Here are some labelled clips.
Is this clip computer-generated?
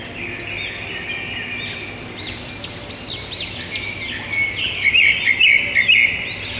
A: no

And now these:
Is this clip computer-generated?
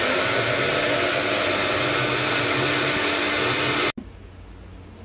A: no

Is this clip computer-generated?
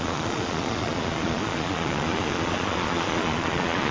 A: yes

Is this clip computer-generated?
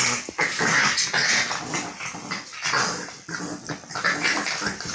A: no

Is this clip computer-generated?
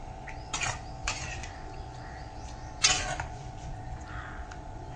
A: yes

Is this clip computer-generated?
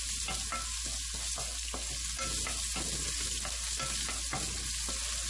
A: no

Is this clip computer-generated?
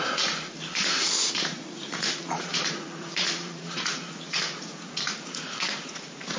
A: yes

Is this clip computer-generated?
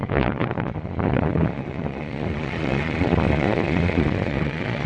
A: yes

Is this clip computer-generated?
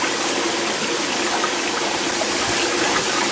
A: no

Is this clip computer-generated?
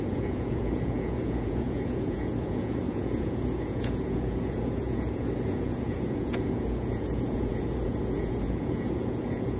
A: yes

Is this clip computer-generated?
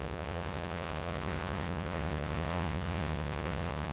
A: yes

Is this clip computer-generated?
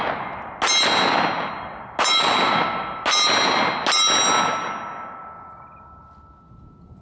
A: no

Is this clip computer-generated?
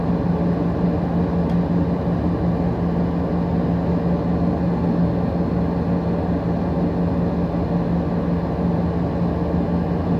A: no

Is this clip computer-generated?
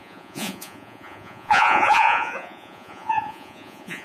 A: yes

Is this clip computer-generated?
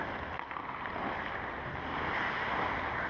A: no